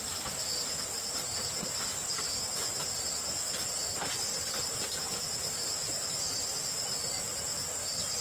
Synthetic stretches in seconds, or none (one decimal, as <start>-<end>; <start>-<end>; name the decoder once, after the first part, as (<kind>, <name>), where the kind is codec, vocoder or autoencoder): none